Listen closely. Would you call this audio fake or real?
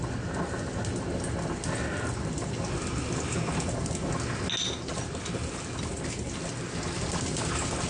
real